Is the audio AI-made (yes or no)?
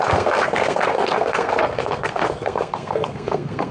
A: yes